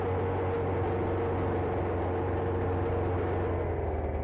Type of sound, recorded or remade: recorded